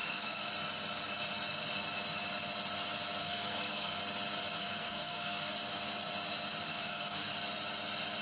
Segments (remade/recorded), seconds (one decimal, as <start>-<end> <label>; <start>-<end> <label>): 0.0-0.5 remade; 0.5-3.2 recorded; 3.2-4.0 remade; 4.0-4.6 recorded; 4.6-5.5 remade; 5.5-6.7 recorded; 6.7-7.3 remade; 7.3-8.2 recorded